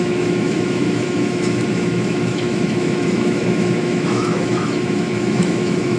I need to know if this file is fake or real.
fake